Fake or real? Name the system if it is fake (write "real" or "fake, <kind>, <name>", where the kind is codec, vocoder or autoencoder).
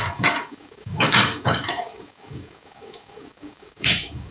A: fake, codec, DAC